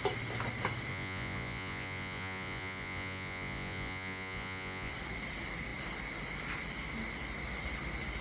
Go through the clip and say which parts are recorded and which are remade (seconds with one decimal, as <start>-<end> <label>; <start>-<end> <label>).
0.0-0.9 recorded; 0.9-4.9 remade; 4.9-8.2 recorded